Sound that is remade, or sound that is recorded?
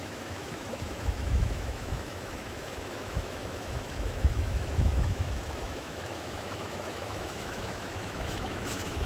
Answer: remade